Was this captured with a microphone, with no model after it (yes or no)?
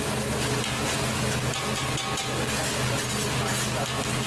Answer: yes